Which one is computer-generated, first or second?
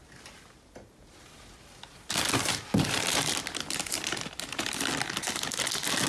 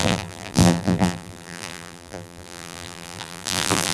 second